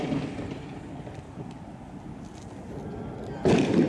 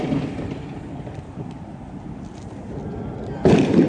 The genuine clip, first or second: first